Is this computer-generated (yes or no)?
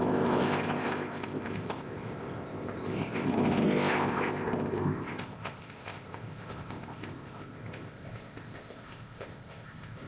yes